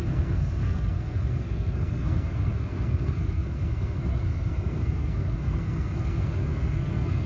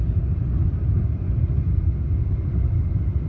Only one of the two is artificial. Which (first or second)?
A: first